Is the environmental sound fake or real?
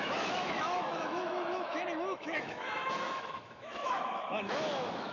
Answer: fake